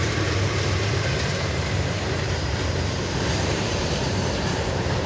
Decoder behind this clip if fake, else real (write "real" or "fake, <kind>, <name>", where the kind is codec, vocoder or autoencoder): fake, vocoder, BigVGAN v2